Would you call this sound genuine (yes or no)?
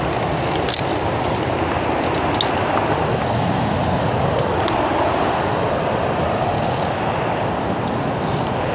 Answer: yes